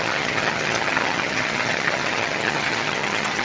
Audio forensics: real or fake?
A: fake